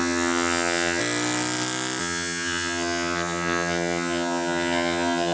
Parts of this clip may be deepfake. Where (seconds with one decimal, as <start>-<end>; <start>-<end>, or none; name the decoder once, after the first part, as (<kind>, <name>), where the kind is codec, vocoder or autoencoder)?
0.0-1.0 (vocoder, HiFi-GAN); 2.0-5.3